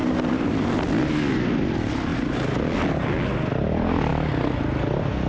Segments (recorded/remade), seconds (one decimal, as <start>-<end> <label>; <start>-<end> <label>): 0.0-5.3 recorded